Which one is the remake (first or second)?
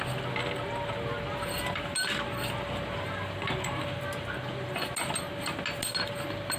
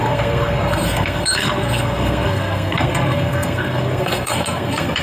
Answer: second